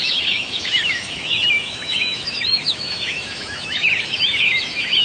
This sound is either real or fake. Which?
fake